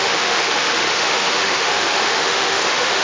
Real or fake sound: fake